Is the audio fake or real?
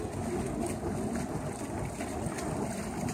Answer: real